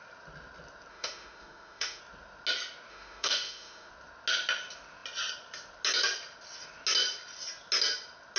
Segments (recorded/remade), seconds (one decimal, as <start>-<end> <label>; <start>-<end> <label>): 0.0-0.9 recorded; 0.9-2.0 remade; 2.0-2.9 recorded; 2.9-3.9 remade; 3.9-8.4 recorded